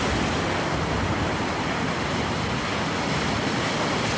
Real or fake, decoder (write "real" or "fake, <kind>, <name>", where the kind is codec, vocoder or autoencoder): real